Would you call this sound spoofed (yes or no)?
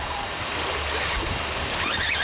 no